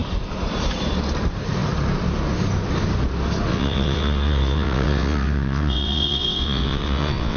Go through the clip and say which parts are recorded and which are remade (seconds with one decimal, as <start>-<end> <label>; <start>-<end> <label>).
0.0-3.5 recorded; 3.5-7.4 remade